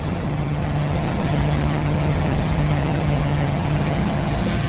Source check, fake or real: fake